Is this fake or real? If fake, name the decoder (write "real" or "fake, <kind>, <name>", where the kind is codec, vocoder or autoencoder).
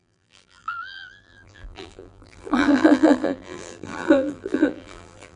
fake, vocoder, BigVGAN v2